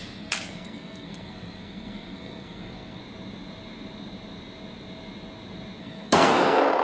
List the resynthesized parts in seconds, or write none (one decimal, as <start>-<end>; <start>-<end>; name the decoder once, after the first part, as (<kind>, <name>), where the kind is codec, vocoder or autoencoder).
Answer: 0.0-3.0 (codec, SNAC); 5.8-6.8